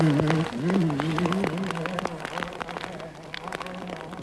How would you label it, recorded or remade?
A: recorded